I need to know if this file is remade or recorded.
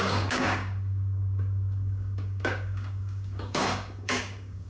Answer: remade